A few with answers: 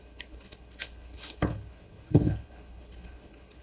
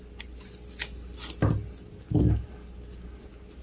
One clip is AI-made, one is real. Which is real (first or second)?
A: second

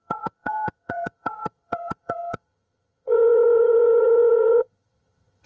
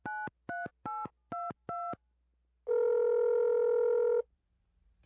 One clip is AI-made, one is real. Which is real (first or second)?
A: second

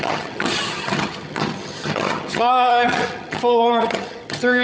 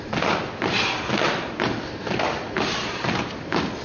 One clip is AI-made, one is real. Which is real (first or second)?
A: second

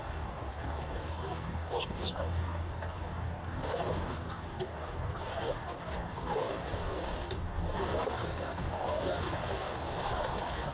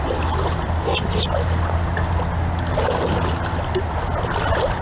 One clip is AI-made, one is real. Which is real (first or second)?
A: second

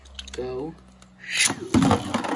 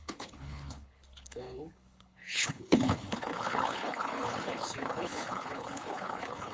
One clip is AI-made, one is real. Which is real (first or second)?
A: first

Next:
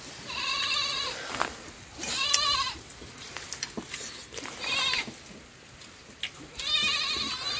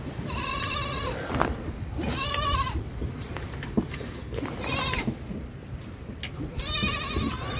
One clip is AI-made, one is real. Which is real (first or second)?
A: first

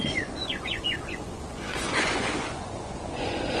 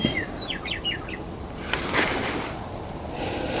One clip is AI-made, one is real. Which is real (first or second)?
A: second